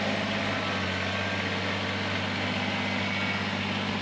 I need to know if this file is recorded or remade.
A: recorded